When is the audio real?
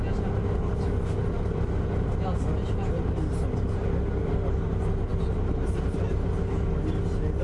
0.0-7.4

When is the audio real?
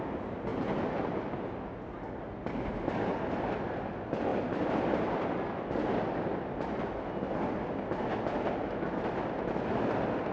0.0-10.3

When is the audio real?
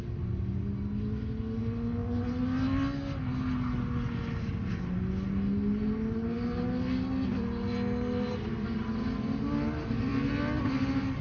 0.0-11.2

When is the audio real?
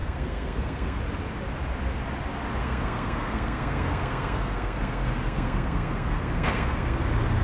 1.0-2.6; 7.0-7.4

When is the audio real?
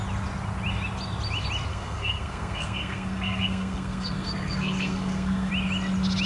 0.0-1.7; 5.5-6.3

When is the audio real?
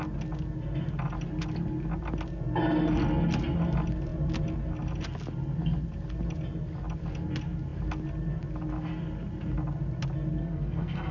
0.0-10.4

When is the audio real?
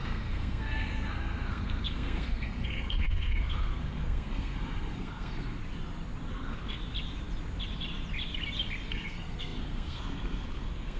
5.6-6.3; 6.8-8.9